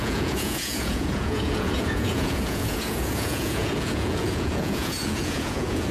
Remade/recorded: remade